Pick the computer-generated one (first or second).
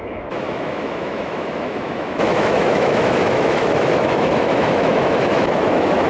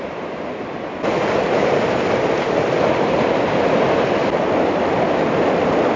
first